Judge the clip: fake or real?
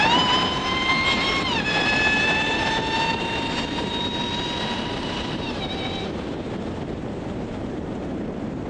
fake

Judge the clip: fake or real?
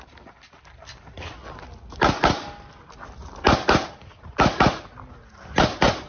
real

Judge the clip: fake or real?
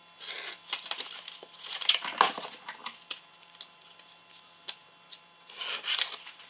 real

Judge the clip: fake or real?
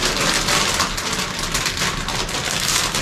real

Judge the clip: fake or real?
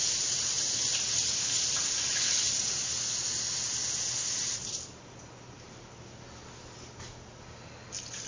real